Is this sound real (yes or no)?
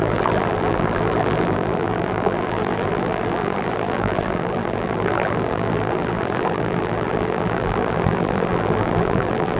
no